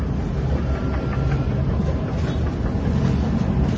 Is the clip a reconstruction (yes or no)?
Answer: no